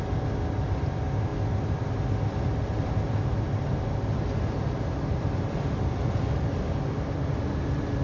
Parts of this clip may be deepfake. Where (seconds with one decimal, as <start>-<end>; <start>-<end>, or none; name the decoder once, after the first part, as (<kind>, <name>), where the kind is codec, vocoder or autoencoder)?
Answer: none